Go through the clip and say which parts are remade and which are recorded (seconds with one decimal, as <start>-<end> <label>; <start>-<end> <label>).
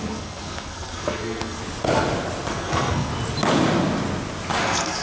0.0-1.6 remade; 1.6-2.5 recorded; 2.5-3.1 remade; 3.1-4.6 recorded; 4.6-5.0 remade